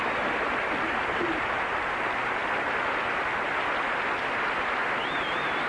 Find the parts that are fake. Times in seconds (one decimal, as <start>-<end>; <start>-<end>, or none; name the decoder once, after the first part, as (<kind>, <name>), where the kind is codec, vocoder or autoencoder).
none